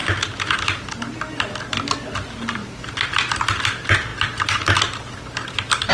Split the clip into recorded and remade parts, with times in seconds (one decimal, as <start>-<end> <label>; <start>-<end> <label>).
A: 0.0-5.9 recorded